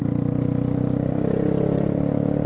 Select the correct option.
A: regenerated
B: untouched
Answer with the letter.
B